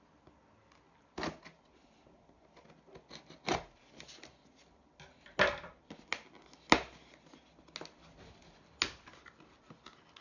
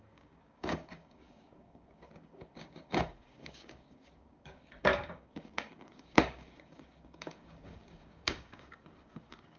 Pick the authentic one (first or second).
first